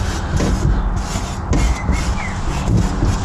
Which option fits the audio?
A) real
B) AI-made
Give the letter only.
A